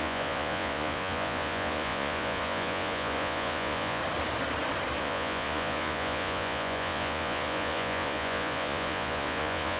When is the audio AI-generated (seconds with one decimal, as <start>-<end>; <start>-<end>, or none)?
0.0-4.0; 5.0-9.8